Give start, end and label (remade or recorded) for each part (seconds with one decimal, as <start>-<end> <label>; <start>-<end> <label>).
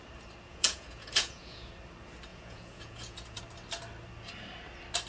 0.0-0.5 recorded; 0.5-1.7 remade; 1.7-2.3 recorded; 2.3-3.4 remade; 3.4-5.1 recorded